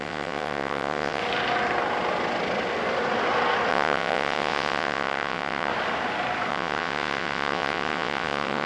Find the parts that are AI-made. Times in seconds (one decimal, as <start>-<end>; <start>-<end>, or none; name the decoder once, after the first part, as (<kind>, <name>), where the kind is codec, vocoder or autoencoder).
0.0-1.2 (vocoder, WaveNeXt); 3.7-5.7; 6.5-8.7